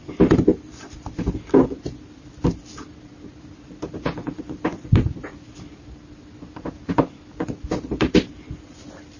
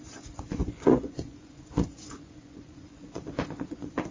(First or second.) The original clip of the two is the first